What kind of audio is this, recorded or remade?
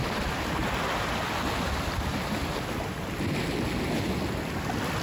recorded